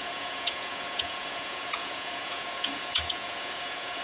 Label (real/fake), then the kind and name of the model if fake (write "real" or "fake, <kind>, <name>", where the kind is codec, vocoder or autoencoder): fake, vocoder, Vocos